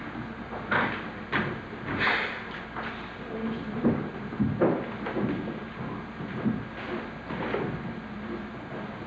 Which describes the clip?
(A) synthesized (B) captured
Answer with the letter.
B